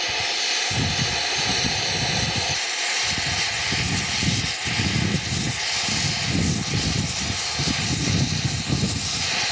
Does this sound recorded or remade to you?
recorded